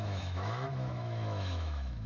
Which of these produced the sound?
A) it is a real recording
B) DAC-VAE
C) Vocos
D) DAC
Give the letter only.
B